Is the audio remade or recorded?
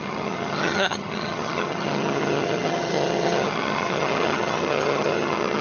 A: remade